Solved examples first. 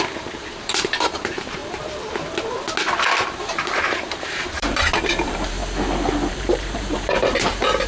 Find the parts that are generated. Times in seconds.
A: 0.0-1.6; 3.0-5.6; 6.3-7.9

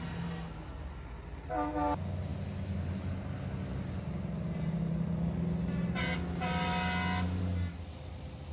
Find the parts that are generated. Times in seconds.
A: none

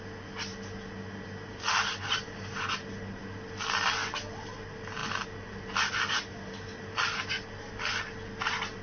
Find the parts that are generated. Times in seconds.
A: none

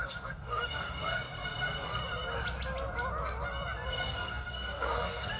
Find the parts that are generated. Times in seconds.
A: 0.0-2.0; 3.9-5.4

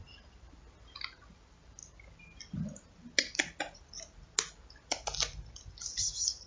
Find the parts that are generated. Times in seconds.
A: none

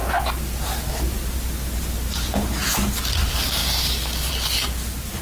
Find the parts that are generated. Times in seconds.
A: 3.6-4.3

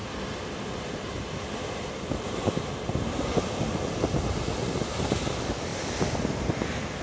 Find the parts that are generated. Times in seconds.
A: 0.0-3.6; 5.7-7.0